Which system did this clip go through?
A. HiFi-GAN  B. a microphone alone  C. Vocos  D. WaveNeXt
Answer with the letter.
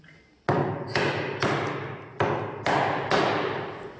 B